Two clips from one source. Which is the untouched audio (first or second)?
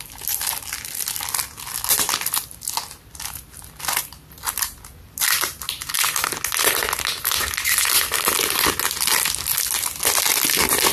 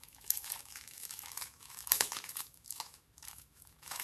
first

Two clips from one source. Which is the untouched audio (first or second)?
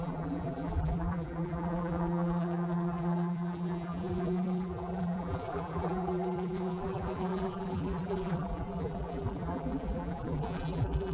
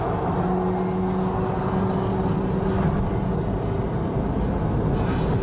second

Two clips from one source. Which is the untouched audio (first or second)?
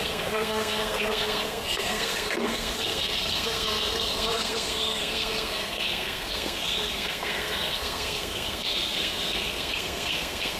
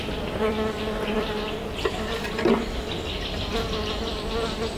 second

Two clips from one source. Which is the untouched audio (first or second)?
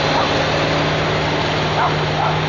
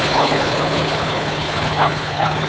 first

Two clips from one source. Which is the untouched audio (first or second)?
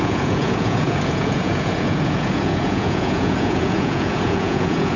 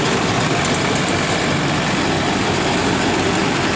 second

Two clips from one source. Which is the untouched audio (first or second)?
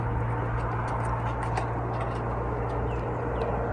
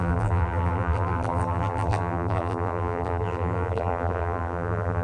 first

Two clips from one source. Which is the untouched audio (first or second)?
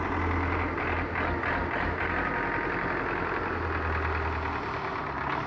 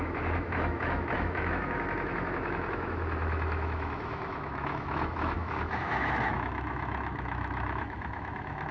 first